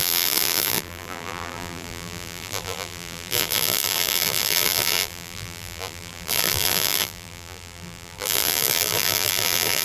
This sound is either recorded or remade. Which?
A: remade